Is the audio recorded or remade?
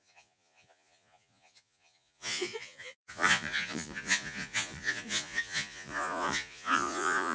remade